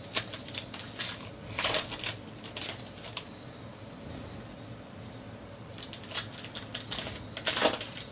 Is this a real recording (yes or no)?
yes